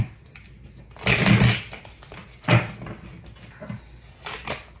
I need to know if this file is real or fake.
real